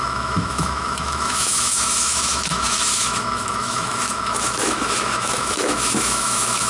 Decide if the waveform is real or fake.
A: fake